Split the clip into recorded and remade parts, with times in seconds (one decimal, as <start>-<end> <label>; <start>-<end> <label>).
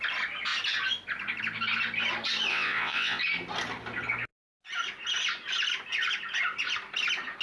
0.0-2.5 recorded; 2.5-3.2 remade; 3.2-7.4 recorded